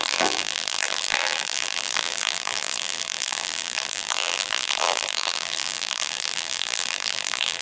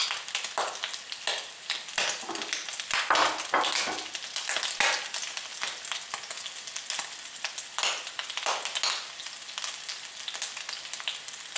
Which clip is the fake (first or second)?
first